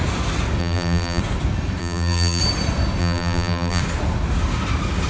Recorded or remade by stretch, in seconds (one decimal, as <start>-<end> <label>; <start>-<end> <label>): 0.0-0.6 recorded; 0.6-1.2 remade; 1.2-1.8 recorded; 1.8-2.4 remade; 2.4-3.0 recorded; 3.0-3.8 remade; 3.8-5.1 recorded